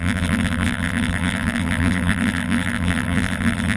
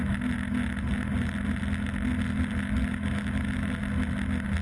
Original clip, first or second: second